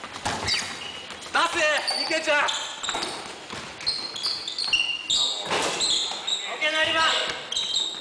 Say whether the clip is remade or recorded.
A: recorded